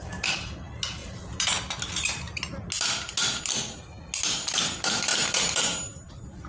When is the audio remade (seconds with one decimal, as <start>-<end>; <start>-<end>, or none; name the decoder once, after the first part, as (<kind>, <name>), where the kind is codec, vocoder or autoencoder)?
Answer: none